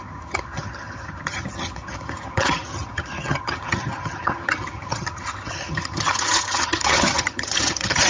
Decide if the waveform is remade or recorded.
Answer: remade